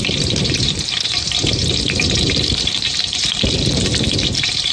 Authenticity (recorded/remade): remade